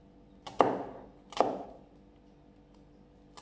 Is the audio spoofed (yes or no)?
no